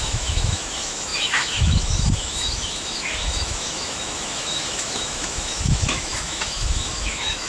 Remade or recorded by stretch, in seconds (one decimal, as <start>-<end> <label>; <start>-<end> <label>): 0.0-7.5 remade